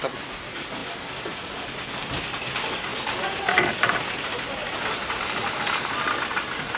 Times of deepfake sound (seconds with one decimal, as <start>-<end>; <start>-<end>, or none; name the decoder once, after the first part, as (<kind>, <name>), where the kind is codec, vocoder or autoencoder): none